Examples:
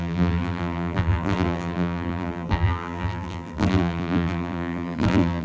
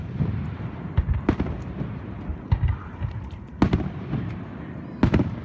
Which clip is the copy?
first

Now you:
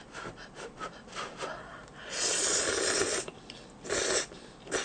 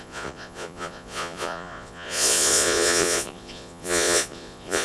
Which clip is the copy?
second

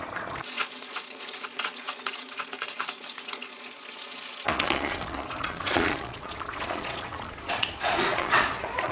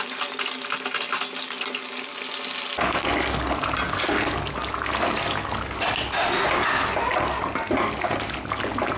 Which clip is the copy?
first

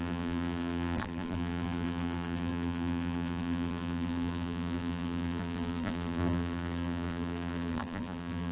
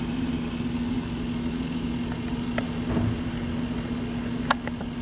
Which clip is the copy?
first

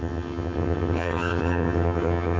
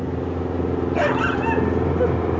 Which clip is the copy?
first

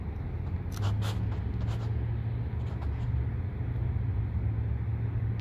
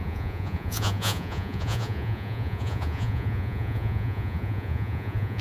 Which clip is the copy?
second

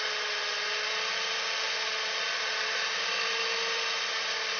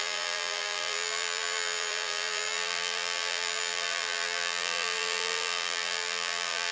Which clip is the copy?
second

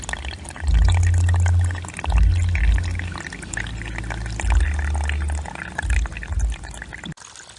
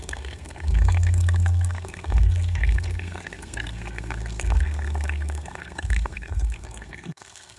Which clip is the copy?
second